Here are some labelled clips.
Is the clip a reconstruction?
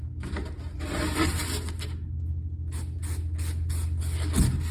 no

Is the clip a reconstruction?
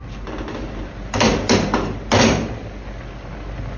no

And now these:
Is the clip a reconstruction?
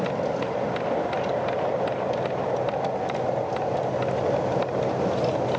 no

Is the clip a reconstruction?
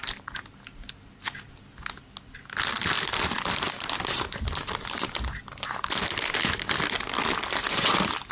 no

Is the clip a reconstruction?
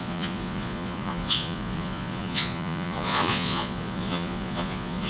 yes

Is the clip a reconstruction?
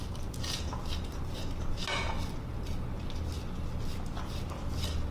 no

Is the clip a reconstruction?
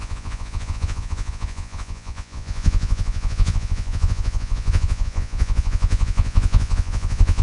yes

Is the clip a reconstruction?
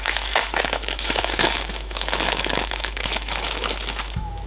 yes